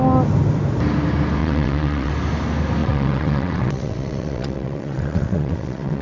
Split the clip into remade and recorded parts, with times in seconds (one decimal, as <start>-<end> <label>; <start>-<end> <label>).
0.0-1.4 recorded; 1.4-2.1 remade; 2.1-2.8 recorded; 2.8-6.0 remade